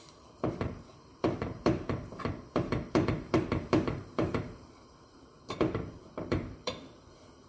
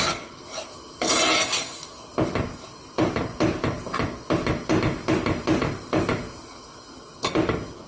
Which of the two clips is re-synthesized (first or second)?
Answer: first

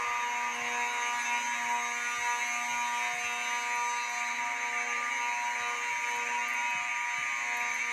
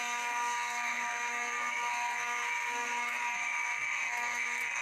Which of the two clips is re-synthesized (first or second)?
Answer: second